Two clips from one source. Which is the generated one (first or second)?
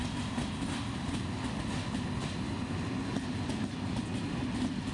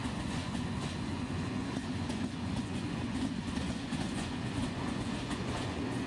second